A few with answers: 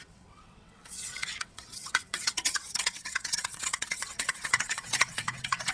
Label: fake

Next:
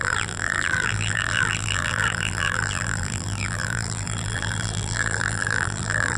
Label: fake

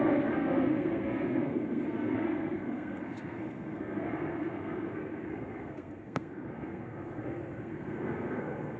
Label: fake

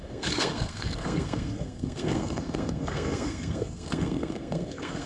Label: fake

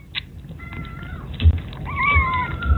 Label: real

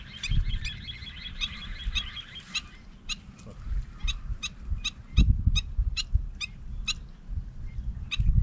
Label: real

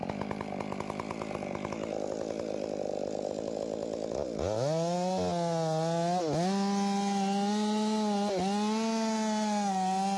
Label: real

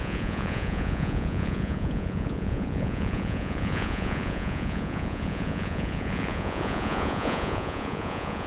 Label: fake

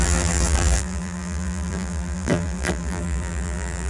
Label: fake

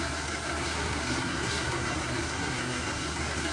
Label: fake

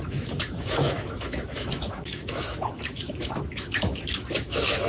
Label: fake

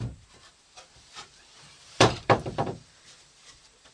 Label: fake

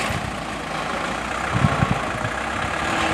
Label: real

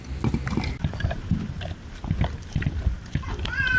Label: real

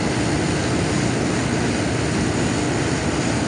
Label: real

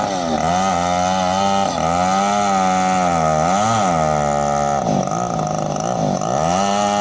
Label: real